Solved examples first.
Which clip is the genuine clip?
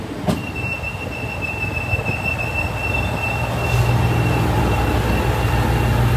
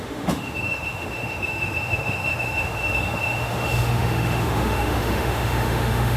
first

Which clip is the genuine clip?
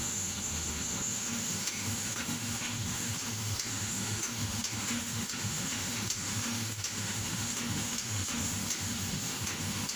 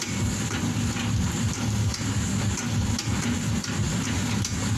second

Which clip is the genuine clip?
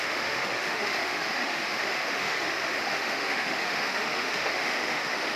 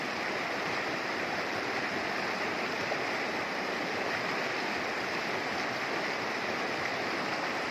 second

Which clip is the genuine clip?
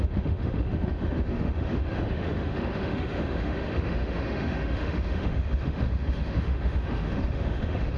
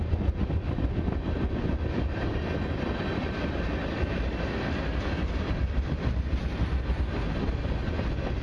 second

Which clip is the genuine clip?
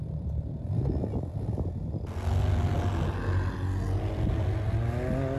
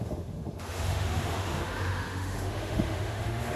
first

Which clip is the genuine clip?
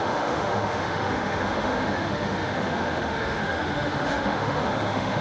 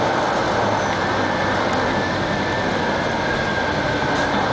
second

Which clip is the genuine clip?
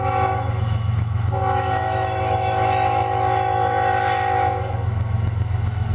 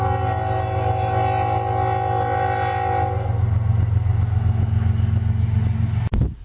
second